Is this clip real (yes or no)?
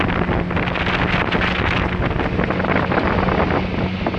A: yes